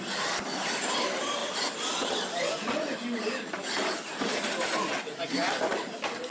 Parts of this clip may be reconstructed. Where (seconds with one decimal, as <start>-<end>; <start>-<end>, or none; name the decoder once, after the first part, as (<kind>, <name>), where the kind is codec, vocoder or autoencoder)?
none